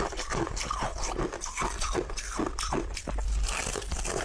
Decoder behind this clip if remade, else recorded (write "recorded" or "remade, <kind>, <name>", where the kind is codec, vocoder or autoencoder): remade, vocoder, BigVGAN v2